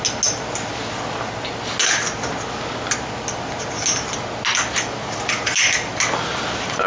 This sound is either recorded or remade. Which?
recorded